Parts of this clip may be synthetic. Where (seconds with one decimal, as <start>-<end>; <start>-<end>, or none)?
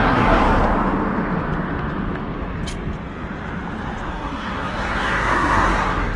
0.0-0.4; 4.1-6.2